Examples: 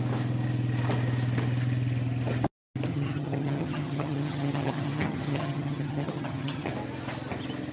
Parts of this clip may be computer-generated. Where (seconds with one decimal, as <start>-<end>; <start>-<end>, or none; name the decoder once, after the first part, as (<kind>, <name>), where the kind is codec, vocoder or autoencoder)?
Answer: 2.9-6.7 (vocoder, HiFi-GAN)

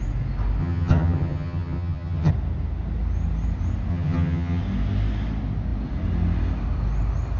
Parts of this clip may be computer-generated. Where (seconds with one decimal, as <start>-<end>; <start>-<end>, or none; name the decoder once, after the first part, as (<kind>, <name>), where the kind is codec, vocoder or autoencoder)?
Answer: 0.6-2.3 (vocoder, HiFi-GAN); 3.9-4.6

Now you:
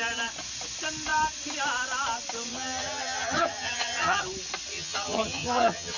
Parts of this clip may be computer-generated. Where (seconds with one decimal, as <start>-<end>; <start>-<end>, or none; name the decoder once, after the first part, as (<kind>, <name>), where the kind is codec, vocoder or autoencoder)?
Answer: 2.5-4.2 (vocoder, HiFi-GAN); 4.7-6.0

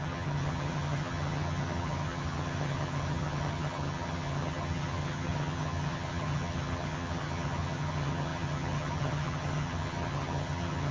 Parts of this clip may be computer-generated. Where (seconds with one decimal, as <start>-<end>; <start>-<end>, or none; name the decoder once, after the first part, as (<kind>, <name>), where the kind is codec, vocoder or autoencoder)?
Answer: 0.0-10.9 (vocoder, HiFi-GAN)